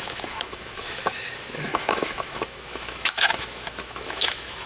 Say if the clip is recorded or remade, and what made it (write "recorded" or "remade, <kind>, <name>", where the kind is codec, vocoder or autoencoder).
remade, autoencoder, DAC-VAE